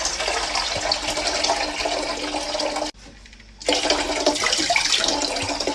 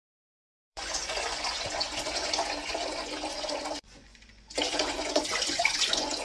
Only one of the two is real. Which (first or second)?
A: first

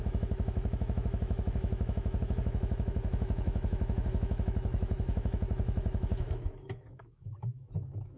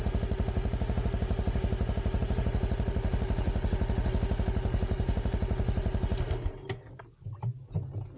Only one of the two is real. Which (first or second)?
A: second